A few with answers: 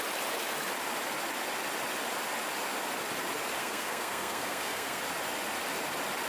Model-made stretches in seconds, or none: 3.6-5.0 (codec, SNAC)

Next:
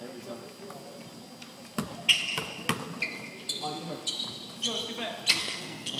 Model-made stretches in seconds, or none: 5.4-6.0 (codec, SNAC)

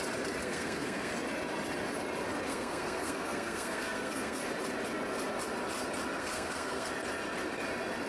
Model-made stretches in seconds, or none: 0.4-1.1 (codec, SNAC); 2.5-4.4; 6.2-6.9

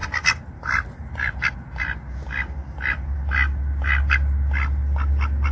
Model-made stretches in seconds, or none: none

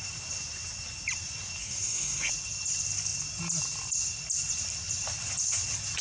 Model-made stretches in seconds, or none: 1.6-2.3 (codec, SNAC)

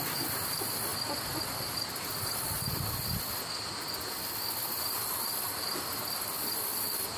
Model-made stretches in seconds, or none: none